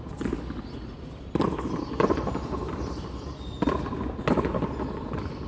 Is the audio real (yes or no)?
yes